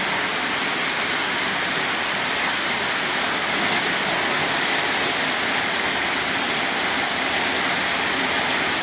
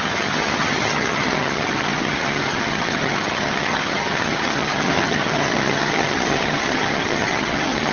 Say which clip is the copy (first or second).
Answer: second